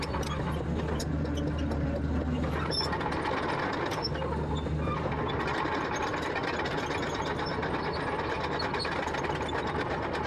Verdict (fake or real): real